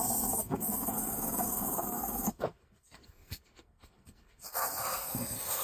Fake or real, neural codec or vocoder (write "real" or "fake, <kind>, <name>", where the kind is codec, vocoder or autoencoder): fake, codec, SNAC